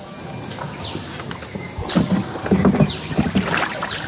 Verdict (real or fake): real